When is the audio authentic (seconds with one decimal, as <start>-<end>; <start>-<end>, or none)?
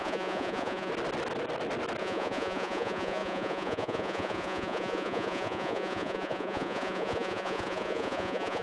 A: 0.9-2.0